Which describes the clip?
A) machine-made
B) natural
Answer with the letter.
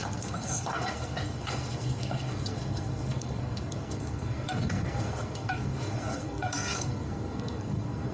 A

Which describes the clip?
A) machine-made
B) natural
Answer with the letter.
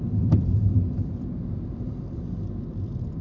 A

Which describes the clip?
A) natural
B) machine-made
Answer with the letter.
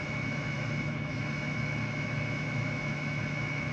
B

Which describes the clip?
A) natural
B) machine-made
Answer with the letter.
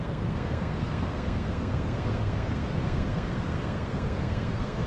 B